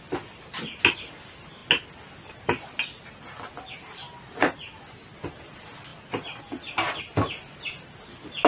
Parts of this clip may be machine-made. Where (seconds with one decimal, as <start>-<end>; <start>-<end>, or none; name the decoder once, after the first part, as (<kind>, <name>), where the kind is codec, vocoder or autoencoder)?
none